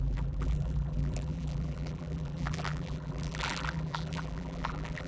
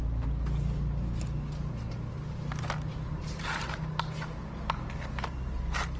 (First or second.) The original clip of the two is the second